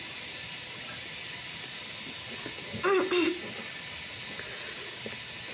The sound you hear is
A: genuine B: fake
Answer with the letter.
A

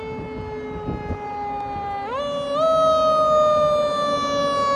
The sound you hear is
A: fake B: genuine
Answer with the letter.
B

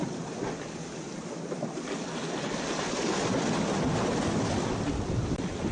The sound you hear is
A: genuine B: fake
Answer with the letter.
A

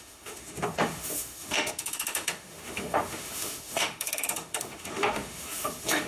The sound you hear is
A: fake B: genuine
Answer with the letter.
A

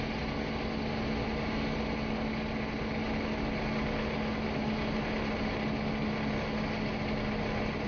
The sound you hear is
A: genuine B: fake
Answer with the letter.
A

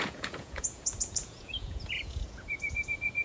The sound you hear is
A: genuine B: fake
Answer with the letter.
B